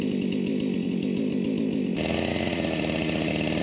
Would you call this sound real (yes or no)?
yes